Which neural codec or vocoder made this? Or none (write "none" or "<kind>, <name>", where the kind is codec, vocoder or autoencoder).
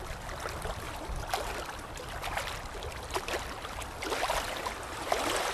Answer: none